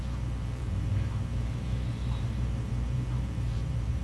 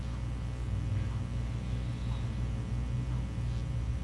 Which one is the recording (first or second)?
second